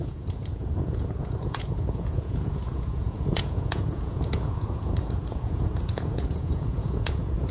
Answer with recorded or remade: remade